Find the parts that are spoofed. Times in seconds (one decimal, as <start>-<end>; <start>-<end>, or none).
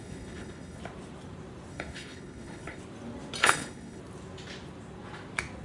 0.0-0.8; 1.7-2.8; 3.4-4.0